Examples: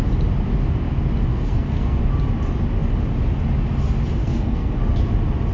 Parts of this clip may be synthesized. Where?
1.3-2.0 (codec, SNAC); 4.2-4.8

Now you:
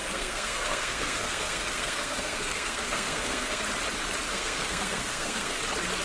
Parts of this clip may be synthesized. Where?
0.0-3.6 (codec, SNAC); 4.3-5.6